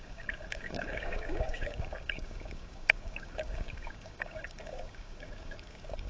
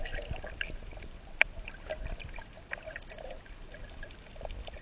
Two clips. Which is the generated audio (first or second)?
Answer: first